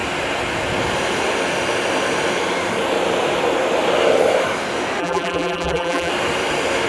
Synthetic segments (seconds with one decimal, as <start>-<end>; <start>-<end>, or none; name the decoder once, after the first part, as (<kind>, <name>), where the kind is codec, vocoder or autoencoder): 5.0-6.1 (vocoder, BigVGAN v2)